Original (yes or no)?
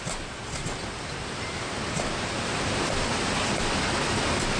yes